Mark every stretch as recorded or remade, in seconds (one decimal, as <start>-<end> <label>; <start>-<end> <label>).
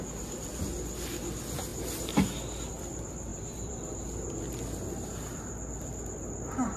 0.0-3.3 recorded; 3.3-4.4 remade; 4.4-6.8 recorded